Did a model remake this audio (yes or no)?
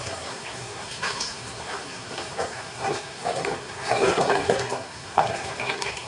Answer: yes